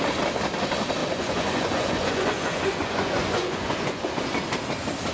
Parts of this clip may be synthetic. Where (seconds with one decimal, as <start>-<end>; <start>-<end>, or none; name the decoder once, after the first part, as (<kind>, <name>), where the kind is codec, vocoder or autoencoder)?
1.0-4.1 (vocoder, Vocos)